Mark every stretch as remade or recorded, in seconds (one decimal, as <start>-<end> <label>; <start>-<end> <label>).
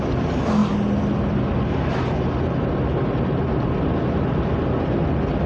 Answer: 0.0-5.5 recorded